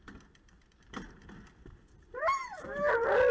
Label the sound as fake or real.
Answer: fake